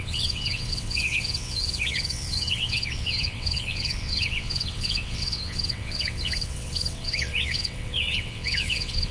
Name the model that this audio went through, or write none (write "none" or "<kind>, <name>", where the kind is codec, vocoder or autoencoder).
vocoder, WaveNeXt